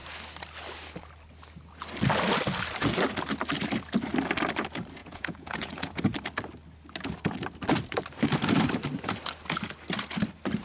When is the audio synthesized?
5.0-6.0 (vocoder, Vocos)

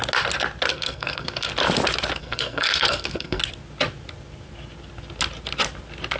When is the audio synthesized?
0.7-1.5 (codec, SNAC); 2.2-3.4

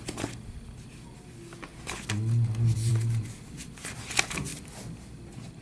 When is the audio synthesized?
none

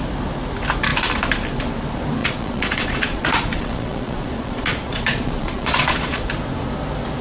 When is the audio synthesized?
2.2-6.3 (vocoder, Vocos)

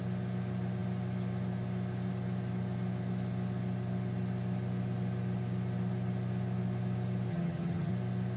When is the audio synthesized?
7.3-7.9 (vocoder, HiFi-GAN)

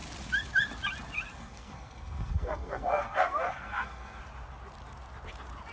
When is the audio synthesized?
1.4-4.2 (codec, SNAC)

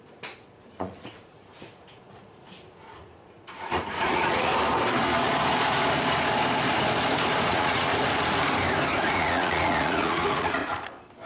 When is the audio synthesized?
0.0-4.5 (vocoder, Vocos); 7.5-7.9; 9.1-10.6